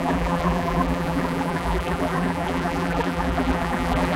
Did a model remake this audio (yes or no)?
yes